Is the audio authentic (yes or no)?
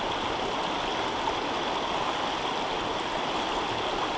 yes